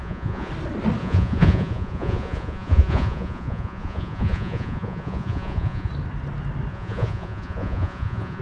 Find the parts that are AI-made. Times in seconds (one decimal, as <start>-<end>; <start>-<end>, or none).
0.0-0.5; 1.0-5.9; 6.7-8.4